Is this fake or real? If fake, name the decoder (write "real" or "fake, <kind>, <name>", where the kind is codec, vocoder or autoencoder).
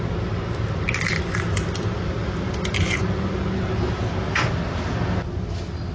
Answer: real